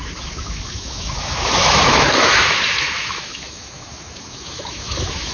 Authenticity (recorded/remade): remade